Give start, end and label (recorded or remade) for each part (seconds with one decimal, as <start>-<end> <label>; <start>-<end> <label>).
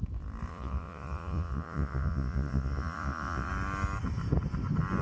0.0-0.5 recorded; 0.5-3.5 remade; 3.5-5.0 recorded